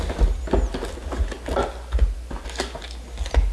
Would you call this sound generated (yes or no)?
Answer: no